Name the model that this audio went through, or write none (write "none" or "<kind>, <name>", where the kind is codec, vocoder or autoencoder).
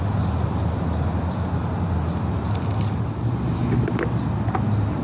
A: none